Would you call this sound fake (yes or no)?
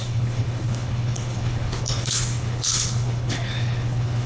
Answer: yes